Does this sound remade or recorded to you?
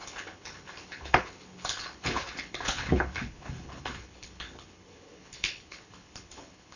remade